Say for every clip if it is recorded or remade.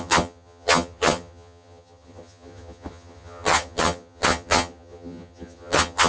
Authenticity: remade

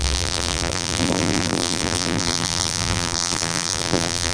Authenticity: remade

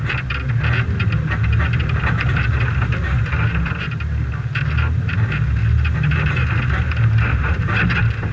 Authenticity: recorded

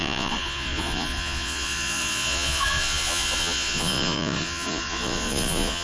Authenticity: remade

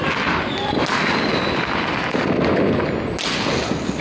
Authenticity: recorded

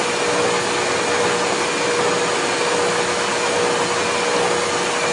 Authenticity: recorded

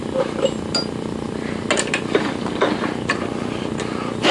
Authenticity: recorded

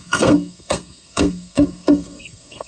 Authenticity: remade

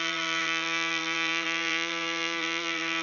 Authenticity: remade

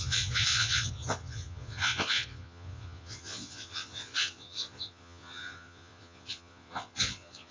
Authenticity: remade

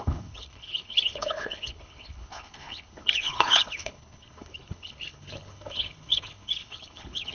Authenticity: remade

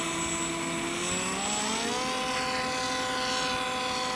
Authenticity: recorded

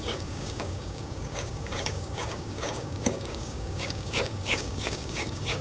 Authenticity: remade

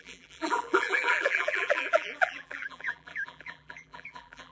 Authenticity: remade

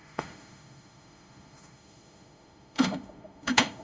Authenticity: remade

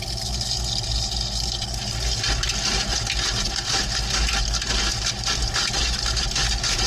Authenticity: recorded